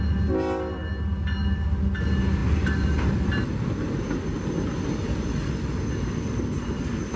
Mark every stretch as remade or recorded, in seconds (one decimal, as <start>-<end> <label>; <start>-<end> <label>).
0.0-7.2 recorded